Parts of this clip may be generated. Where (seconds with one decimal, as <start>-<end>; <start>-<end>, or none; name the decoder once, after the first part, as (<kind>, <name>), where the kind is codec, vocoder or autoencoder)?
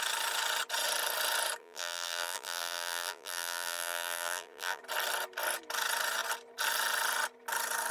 1.6-4.8 (vocoder, BigVGAN v2)